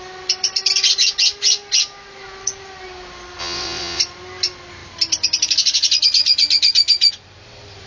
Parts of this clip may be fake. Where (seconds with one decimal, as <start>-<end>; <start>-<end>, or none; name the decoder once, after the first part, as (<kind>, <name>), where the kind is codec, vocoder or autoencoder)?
3.4-4.0 (vocoder, WaveNeXt)